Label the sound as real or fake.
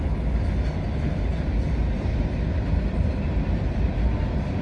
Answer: real